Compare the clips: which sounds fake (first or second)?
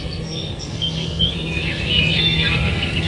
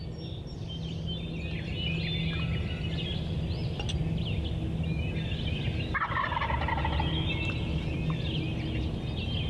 first